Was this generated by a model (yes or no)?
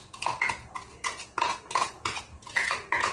yes